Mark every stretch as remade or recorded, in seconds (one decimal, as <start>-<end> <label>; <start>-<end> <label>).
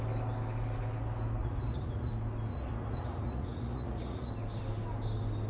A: 0.0-1.4 recorded; 1.4-2.1 remade; 2.1-2.5 recorded; 2.5-4.3 remade; 4.3-5.5 recorded